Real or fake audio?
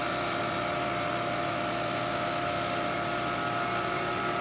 real